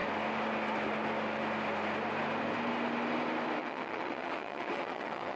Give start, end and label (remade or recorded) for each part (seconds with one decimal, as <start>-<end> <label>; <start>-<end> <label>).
0.0-3.6 recorded; 3.6-5.4 remade